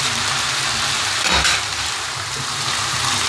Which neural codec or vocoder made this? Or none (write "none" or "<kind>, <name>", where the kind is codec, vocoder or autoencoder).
vocoder, BigVGAN v2